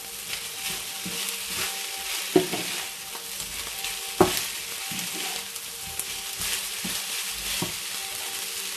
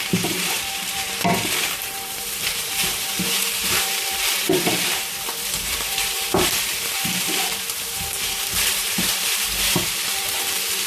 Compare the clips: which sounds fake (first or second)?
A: second